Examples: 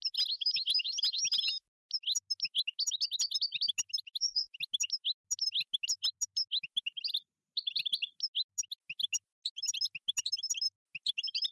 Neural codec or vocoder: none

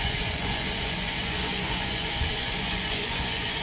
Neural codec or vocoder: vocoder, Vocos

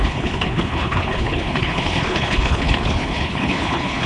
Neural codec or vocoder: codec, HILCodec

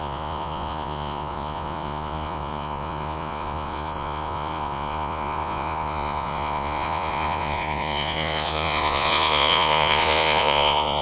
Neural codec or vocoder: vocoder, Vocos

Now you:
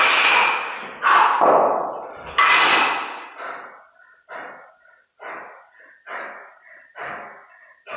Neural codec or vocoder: none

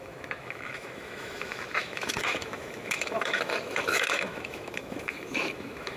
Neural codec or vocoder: autoencoder, DAC-VAE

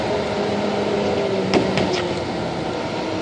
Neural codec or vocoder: none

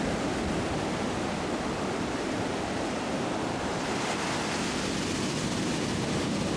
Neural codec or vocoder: none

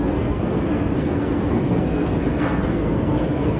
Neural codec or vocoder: codec, SNAC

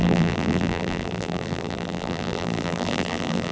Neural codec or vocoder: vocoder, BigVGAN v2